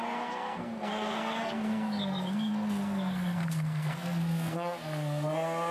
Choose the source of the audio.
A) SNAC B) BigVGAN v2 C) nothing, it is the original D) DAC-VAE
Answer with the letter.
A